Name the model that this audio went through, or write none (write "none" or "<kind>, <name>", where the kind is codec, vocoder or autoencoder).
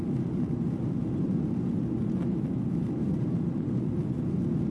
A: none